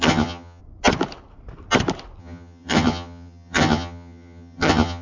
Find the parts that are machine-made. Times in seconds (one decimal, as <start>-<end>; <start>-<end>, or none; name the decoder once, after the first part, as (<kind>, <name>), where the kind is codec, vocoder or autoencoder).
0.0-0.6 (vocoder, HiFi-GAN); 2.2-5.0